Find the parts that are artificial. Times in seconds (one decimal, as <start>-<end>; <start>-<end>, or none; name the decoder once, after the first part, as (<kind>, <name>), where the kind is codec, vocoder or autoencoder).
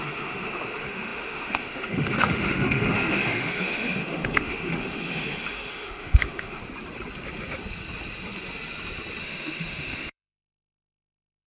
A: 0.0-6.6 (autoencoder, DAC-VAE); 9.2-11.5